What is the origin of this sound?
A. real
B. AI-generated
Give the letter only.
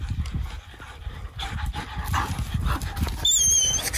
A